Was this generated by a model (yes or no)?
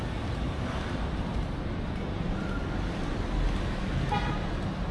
no